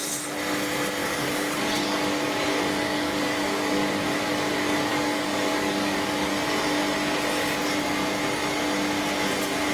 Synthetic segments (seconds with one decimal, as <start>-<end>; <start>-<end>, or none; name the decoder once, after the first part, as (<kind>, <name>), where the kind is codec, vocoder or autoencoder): 1.0-4.5 (codec, DAC); 4.9-6.3